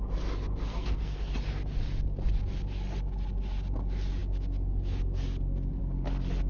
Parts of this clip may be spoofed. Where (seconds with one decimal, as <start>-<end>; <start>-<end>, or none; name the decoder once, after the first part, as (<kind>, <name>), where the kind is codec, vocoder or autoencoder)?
0.7-1.3 (codec, SNAC)